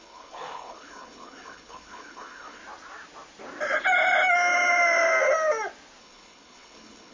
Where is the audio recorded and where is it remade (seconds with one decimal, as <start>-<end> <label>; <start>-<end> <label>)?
0.0-2.6 remade; 2.6-6.0 recorded; 6.0-7.1 remade